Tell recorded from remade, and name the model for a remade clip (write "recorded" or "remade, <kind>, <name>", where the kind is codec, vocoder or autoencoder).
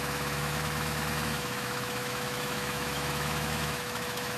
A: remade, autoencoder, DAC-VAE